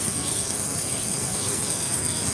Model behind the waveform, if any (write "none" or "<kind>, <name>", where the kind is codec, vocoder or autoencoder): codec, SNAC